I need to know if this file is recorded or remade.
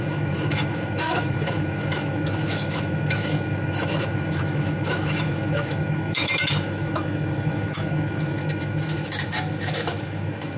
remade